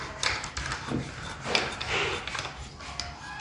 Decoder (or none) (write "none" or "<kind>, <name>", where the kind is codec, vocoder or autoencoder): none